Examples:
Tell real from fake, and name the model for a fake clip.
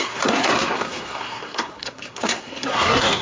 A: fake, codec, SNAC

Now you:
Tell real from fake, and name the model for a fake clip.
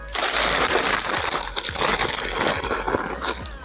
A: real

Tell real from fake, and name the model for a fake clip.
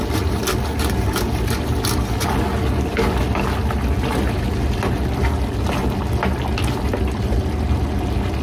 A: real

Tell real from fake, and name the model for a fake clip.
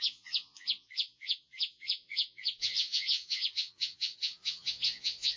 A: fake, vocoder, Vocos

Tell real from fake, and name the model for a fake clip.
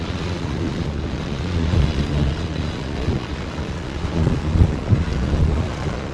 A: fake, vocoder, Vocos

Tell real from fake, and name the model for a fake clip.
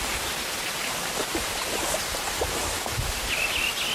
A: real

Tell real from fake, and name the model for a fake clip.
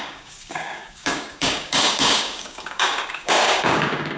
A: fake, codec, DAC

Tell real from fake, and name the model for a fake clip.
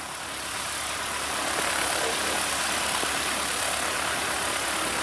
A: fake, vocoder, BigVGAN v2